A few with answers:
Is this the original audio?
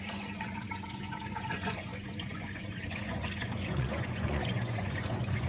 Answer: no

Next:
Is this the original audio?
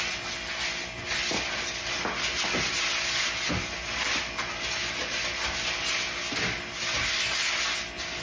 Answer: yes